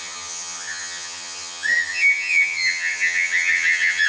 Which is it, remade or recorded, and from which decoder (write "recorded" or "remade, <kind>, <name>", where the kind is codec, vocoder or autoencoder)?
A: remade, vocoder, HiFi-GAN